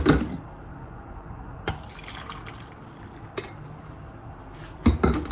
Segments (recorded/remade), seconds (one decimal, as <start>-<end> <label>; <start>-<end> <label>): 0.0-0.7 recorded; 0.7-1.7 remade; 1.7-5.3 recorded